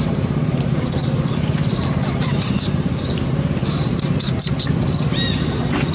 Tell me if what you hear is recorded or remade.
remade